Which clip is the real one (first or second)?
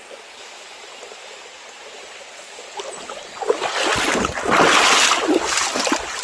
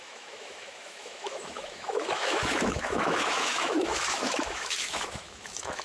first